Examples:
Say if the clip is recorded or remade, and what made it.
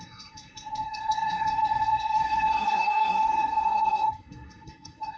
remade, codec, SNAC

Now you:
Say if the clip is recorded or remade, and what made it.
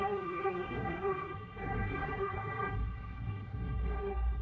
remade, codec, SNAC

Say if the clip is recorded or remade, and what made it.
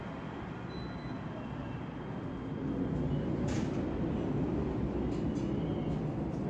recorded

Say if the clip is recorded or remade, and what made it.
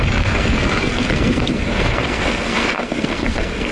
remade, codec, SNAC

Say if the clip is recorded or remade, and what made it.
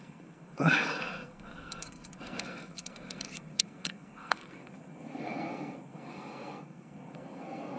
remade, codec, SNAC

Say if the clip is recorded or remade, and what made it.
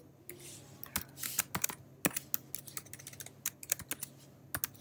recorded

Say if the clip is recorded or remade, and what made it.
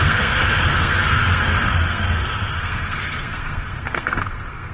remade, codec, SNAC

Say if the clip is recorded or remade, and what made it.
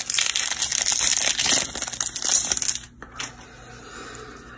recorded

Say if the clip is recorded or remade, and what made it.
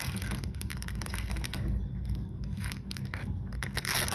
remade, codec, SNAC